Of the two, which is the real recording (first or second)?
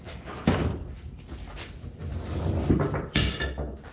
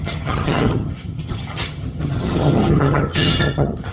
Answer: first